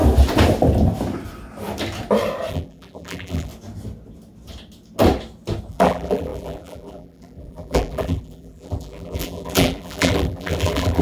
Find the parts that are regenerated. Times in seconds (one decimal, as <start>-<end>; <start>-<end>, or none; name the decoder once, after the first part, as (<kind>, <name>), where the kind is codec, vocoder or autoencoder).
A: 2.5-3.5 (vocoder, BigVGAN v2); 5.7-11.0